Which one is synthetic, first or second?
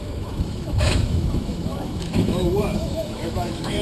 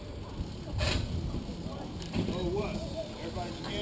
first